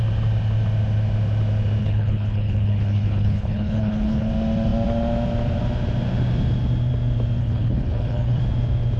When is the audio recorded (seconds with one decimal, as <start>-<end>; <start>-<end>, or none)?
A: 0.0-1.8; 4.3-7.4; 8.4-9.0